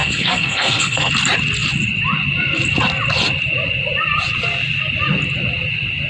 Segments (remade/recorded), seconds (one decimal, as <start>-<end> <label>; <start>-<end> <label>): 0.0-1.1 remade; 1.1-6.1 recorded